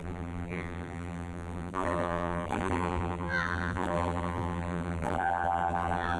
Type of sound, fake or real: fake